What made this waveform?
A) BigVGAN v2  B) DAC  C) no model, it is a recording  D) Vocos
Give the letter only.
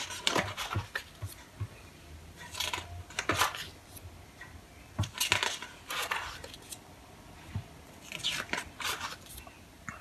C